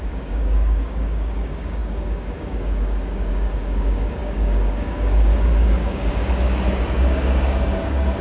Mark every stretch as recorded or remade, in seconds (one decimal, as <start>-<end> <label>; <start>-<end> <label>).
0.0-8.2 remade